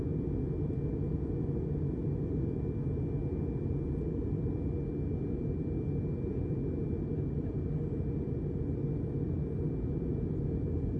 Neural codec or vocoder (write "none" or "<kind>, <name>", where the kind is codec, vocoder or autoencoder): none